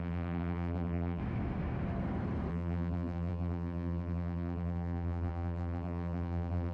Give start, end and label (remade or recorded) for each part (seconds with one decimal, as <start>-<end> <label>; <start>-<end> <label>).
0.0-1.2 remade; 1.2-2.5 recorded; 2.5-6.7 remade